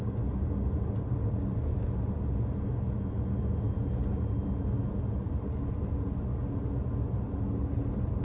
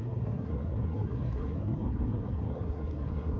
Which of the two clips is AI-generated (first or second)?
second